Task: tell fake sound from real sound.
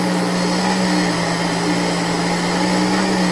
real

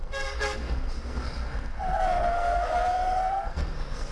fake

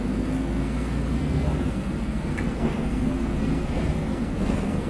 fake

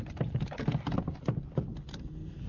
real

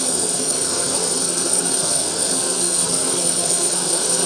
fake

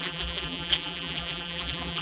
fake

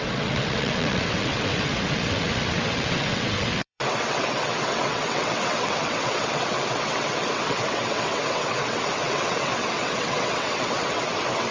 fake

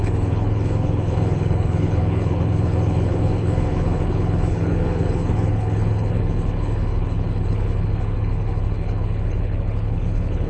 fake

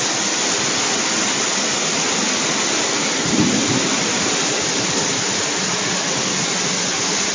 real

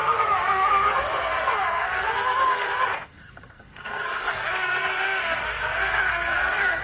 fake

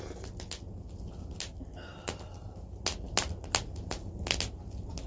real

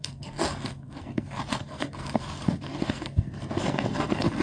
fake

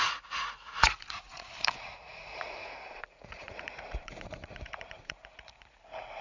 fake